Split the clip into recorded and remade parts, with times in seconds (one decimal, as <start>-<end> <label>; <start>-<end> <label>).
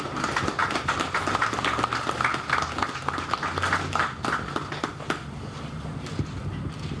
0.0-7.0 recorded